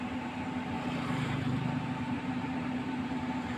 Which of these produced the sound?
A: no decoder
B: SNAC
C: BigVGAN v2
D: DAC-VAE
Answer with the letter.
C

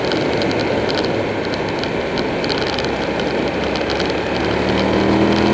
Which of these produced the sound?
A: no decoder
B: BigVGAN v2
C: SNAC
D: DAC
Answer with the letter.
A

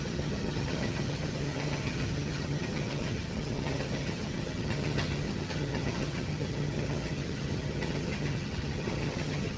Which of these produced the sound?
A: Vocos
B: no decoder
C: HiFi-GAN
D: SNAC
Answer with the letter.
C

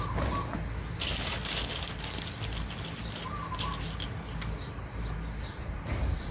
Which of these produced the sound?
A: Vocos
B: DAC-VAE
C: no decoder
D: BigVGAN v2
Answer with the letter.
C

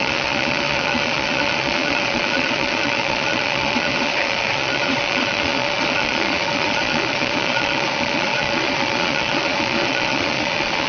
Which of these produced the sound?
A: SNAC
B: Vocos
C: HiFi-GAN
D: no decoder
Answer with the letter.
B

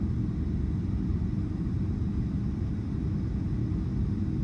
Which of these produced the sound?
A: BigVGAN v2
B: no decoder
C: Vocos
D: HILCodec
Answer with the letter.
B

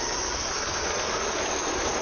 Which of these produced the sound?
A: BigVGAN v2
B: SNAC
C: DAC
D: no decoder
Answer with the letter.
D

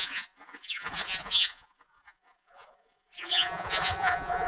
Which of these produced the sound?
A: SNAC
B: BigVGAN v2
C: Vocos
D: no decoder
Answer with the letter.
C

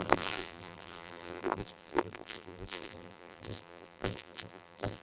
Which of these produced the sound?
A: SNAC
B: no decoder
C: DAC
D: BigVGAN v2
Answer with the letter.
D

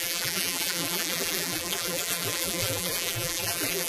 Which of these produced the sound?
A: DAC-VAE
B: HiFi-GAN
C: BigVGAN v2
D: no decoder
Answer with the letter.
C